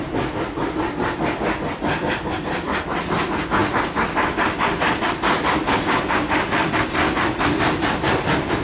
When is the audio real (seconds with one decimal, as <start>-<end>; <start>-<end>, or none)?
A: 3.6-6.1